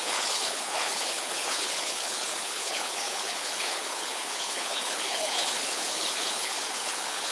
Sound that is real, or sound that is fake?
fake